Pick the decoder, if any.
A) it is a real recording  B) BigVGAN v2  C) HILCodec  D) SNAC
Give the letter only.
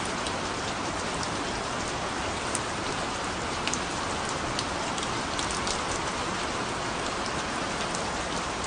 A